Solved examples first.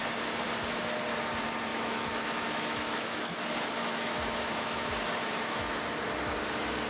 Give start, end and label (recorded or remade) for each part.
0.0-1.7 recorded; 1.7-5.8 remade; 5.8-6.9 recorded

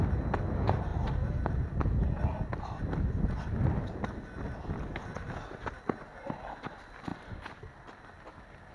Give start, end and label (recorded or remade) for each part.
0.0-8.7 recorded

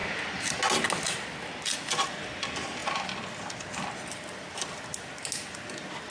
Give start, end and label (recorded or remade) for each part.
0.0-6.1 recorded

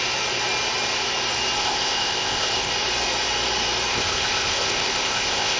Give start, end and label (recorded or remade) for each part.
0.0-1.6 recorded; 1.6-2.7 remade; 2.7-3.9 recorded; 3.9-5.6 remade

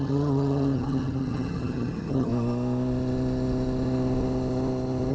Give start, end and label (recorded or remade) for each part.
0.0-2.3 remade; 2.3-5.1 recorded

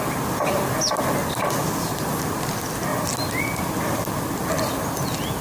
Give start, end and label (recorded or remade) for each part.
0.0-5.4 recorded

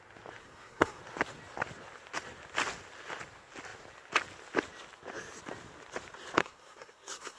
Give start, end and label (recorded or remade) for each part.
0.0-0.4 recorded; 0.4-1.0 remade; 1.0-6.4 recorded; 6.4-7.4 remade